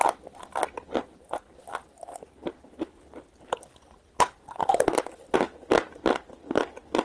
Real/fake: real